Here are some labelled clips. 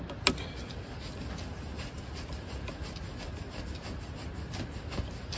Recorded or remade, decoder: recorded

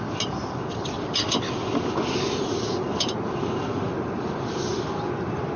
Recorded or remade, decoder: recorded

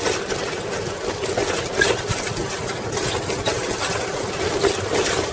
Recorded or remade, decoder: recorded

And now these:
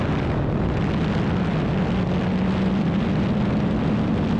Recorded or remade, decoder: recorded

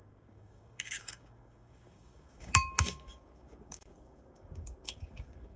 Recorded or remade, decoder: remade, codec, DAC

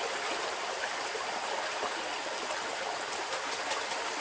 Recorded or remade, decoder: recorded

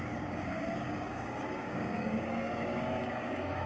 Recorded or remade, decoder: remade, codec, DAC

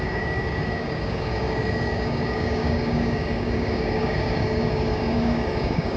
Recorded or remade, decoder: remade, codec, DAC